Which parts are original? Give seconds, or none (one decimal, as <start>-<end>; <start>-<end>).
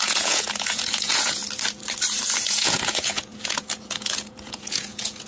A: 1.4-2.4